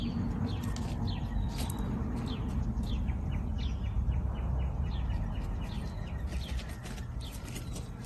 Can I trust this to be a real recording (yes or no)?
yes